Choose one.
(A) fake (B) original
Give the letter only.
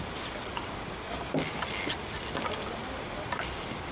B